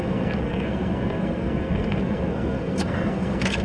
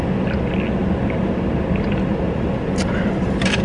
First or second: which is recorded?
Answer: second